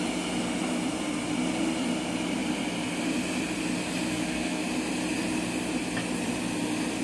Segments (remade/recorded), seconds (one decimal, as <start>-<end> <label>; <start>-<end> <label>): 0.0-4.1 recorded; 4.1-4.6 remade; 4.6-7.0 recorded